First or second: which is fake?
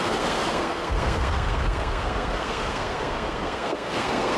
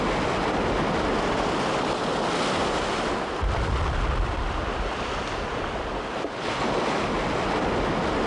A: first